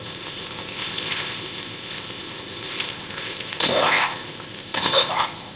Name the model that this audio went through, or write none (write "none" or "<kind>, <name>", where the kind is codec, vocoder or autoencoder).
codec, ZipCodec